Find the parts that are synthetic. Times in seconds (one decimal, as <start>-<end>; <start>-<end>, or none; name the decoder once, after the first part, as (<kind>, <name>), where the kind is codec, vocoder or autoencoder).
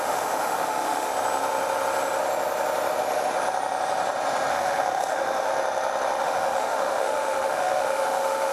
0.0-1.1 (autoencoder, DAC-VAE); 4.5-5.5; 6.2-8.5